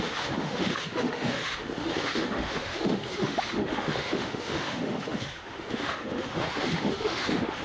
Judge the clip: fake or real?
fake